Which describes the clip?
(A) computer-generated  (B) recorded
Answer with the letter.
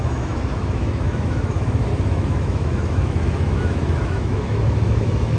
A